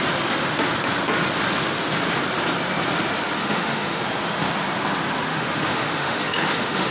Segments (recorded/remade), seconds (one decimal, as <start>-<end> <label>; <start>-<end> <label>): 0.0-3.4 recorded; 3.4-4.0 remade; 4.0-5.3 recorded; 5.3-6.9 remade